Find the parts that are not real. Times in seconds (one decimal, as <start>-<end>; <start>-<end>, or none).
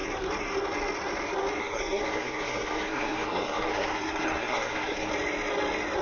1.6-5.1